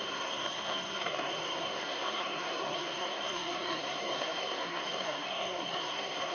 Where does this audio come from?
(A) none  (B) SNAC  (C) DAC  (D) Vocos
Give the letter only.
B